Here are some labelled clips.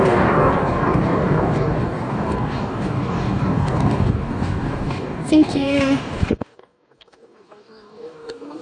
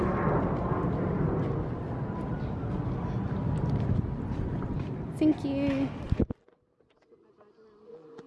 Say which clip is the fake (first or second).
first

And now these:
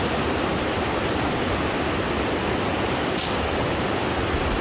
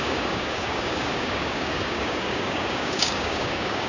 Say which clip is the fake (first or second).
second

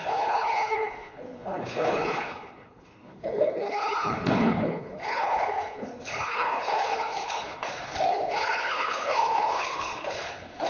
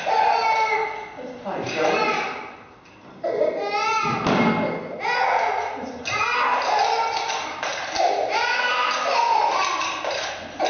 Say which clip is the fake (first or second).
first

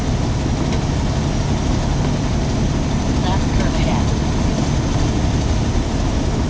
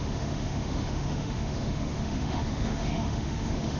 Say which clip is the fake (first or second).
second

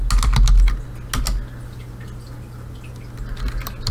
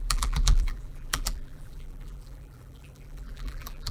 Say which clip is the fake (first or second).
second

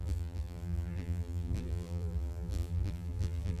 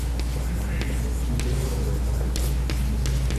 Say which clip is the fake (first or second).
first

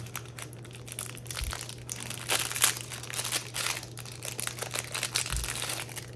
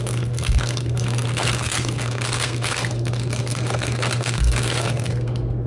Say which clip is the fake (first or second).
second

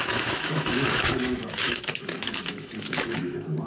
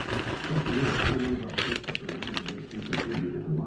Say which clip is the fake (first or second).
first